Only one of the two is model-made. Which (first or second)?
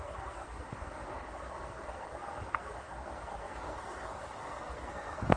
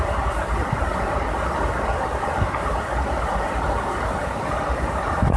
first